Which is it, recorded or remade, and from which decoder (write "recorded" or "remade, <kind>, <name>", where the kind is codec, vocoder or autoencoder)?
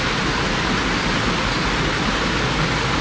recorded